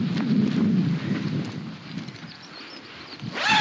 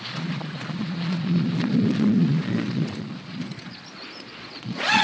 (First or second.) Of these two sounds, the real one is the first